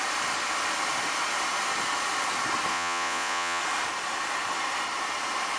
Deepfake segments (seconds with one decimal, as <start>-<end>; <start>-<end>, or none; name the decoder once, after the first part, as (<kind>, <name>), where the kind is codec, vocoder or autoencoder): 2.7-3.6 (vocoder, Vocos)